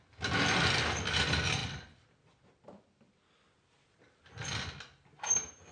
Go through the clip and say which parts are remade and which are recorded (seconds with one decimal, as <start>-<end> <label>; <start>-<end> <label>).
0.0-1.6 recorded; 1.6-3.4 remade; 3.4-5.7 recorded